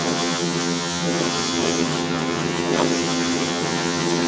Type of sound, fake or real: fake